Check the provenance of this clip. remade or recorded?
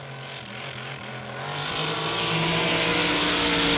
recorded